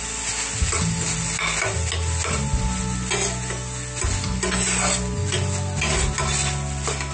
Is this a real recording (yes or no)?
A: yes